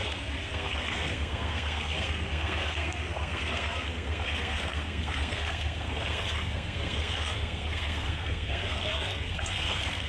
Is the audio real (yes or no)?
no